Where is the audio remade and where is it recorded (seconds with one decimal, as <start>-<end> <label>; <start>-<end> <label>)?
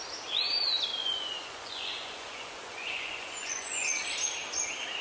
0.0-1.0 recorded; 1.0-4.0 remade; 4.0-5.0 recorded